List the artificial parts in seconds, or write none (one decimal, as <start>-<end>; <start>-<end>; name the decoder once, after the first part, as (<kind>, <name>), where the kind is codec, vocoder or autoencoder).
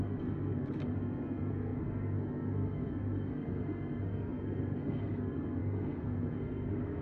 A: 0.0-7.0 (codec, SNAC)